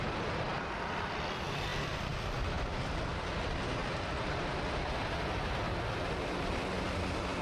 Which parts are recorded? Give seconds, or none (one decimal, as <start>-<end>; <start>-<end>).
0.0-7.4